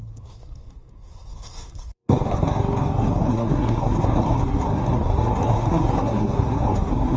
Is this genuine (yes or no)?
no